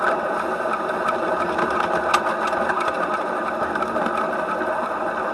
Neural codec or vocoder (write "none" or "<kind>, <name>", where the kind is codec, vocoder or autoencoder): none